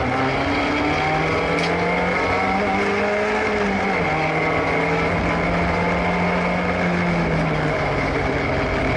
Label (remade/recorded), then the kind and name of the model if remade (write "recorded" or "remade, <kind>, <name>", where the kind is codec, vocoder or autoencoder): recorded